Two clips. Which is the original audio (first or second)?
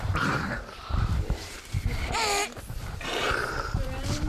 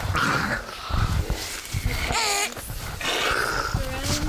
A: second